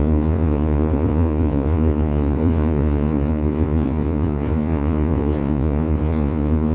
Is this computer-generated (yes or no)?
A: yes